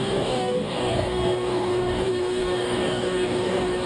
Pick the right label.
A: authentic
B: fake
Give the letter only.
B